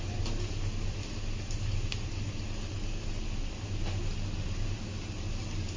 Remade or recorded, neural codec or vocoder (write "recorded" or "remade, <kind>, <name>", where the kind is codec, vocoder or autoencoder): recorded